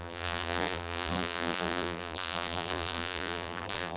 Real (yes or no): no